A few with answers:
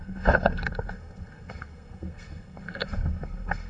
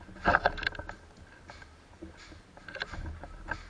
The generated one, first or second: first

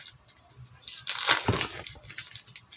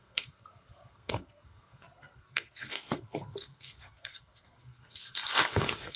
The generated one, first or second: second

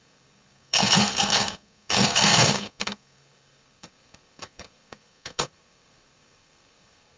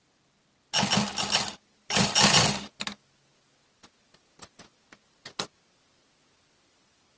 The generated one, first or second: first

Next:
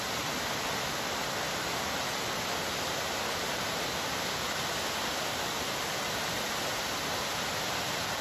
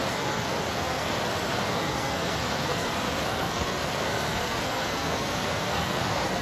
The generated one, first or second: second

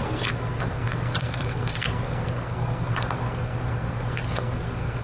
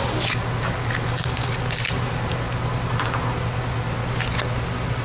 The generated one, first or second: first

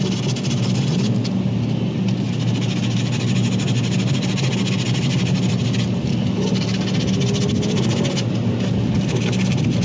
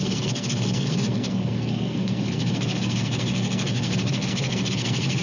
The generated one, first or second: second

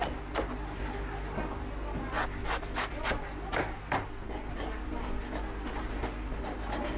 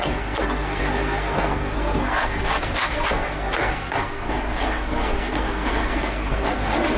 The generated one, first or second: second